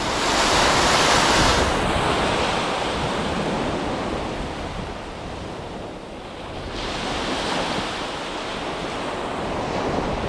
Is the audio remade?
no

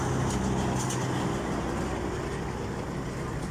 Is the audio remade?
no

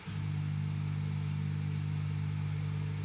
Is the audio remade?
no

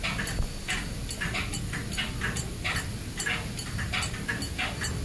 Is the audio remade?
no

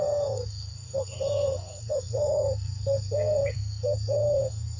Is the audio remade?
yes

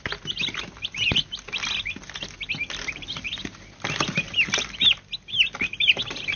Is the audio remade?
no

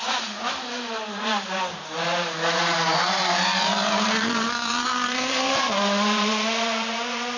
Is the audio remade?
yes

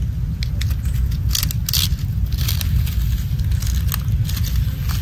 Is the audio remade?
no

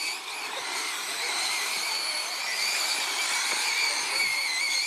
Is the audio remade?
no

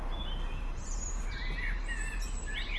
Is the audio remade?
no